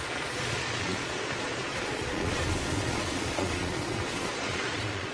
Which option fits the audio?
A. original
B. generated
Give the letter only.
B